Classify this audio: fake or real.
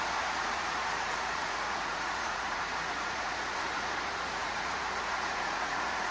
fake